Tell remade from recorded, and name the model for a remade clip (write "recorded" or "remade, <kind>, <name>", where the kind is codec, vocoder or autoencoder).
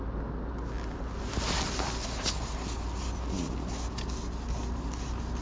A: recorded